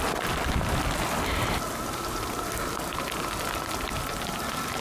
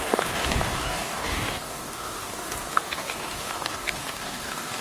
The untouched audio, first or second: first